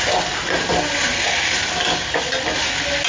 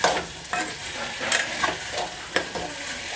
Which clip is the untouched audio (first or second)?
first